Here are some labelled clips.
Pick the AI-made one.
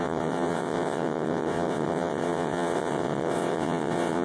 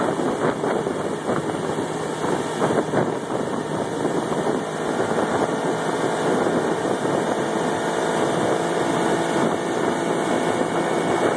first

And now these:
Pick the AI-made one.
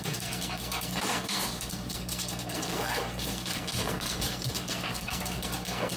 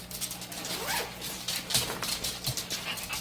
first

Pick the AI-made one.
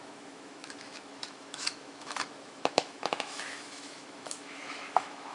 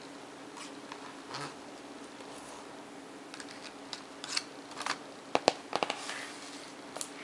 first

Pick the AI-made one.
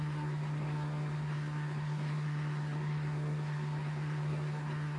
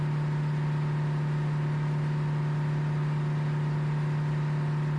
first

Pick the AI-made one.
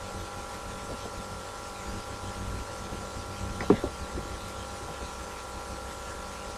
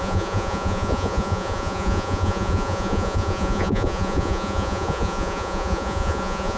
second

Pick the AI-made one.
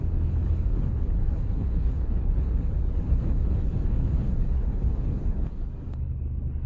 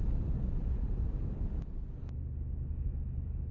first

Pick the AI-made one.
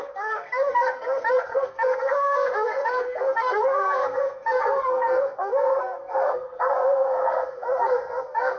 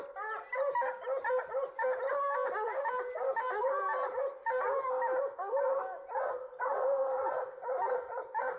first